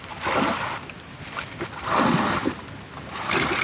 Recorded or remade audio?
recorded